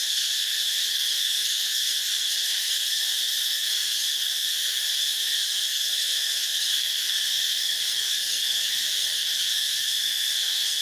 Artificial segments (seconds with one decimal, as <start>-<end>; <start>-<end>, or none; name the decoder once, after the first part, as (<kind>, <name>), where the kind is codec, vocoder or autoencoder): 0.0-10.8 (codec, SNAC)